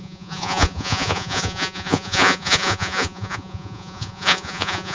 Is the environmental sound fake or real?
fake